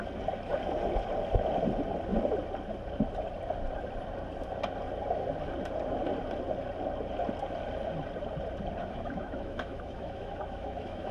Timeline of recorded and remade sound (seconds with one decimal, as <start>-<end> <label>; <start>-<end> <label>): 0.0-8.8 recorded; 8.8-11.1 remade

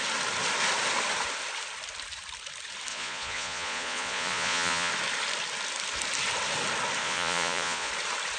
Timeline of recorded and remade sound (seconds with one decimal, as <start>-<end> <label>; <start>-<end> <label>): 0.0-2.9 recorded; 2.9-4.9 remade; 4.9-7.0 recorded; 7.0-7.9 remade; 7.9-8.4 recorded

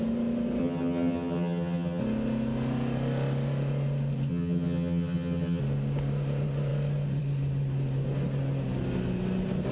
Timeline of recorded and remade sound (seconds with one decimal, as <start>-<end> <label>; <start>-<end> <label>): 0.0-0.6 recorded; 0.6-2.0 remade; 2.0-4.3 recorded; 4.3-5.6 remade; 5.6-9.7 recorded

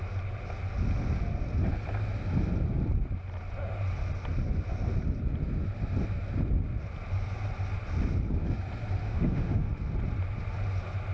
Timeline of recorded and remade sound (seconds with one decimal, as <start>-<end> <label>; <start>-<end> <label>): 0.0-9.0 recorded; 9.0-9.7 remade; 9.7-11.1 recorded

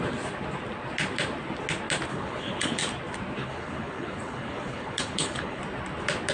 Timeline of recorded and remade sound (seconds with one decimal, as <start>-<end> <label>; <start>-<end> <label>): 0.0-2.1 recorded; 2.1-2.8 remade; 2.8-3.4 recorded; 3.4-5.6 remade; 5.6-6.3 recorded

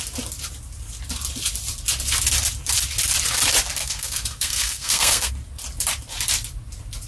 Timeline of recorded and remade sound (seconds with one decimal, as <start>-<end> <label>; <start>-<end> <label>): 0.0-3.8 recorded; 3.8-5.3 remade; 5.3-7.1 recorded

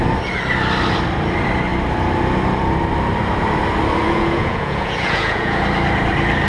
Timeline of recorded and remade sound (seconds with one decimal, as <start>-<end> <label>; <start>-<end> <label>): 0.0-4.0 recorded; 4.0-5.6 remade; 5.6-6.5 recorded

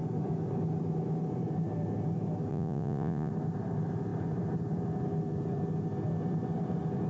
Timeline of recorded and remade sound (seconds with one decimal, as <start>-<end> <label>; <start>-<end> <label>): 0.0-2.5 recorded; 2.5-3.3 remade; 3.3-7.1 recorded